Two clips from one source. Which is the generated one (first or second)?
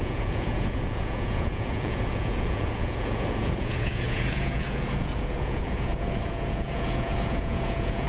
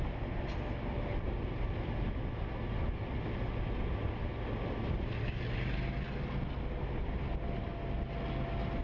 first